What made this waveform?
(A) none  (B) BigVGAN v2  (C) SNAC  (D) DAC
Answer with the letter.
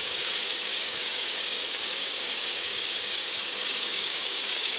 D